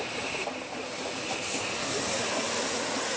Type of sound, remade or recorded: recorded